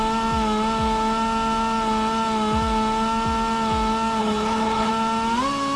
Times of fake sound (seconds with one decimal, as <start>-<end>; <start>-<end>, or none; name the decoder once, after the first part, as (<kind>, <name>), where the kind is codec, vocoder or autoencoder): 4.2-4.9 (codec, HILCodec)